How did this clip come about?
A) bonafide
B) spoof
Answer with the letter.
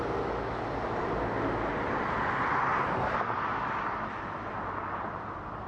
A